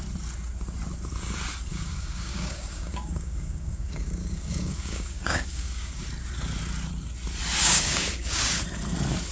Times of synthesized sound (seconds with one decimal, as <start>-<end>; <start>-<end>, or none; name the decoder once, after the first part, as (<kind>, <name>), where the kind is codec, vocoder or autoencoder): 1.7-6.0 (codec, DAC); 7.6-8.6